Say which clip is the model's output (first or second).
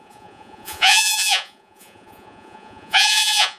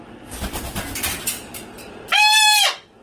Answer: first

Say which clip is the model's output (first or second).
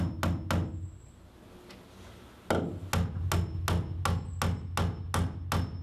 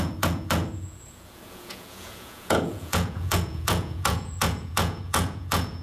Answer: second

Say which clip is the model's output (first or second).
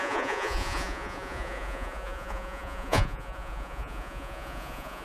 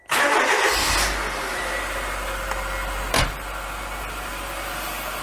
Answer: first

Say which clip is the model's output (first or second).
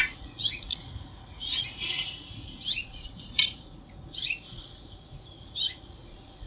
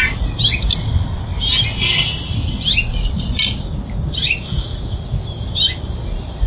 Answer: first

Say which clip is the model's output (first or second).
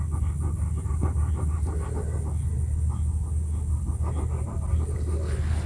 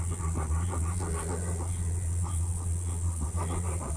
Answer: second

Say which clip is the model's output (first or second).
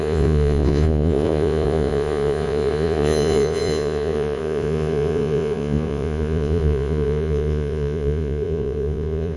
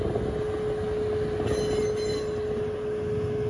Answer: first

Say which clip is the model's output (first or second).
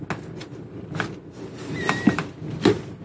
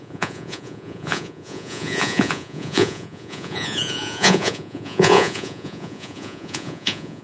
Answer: second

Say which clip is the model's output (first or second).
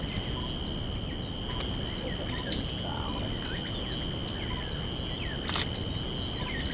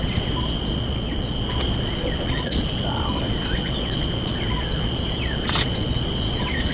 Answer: second